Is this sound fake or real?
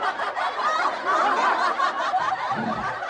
real